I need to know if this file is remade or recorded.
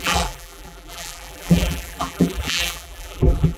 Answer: remade